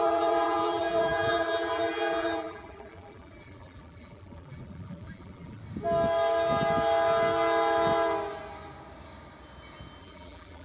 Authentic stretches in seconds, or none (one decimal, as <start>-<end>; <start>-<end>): 5.6-10.0